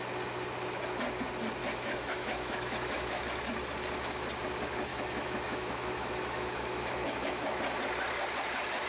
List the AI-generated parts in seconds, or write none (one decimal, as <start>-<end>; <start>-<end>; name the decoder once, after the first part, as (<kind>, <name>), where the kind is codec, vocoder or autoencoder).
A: 1.6-3.2 (autoencoder, DAC-VAE); 4.9-7.6